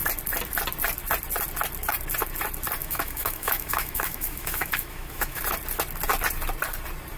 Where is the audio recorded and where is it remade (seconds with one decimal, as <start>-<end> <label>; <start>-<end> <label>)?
0.0-2.8 recorded; 2.8-5.4 remade; 5.4-7.2 recorded